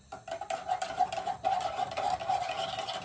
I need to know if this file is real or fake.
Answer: real